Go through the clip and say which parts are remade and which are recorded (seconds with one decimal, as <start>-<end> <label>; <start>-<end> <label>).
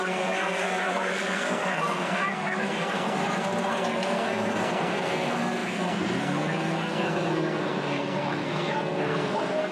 0.0-9.7 remade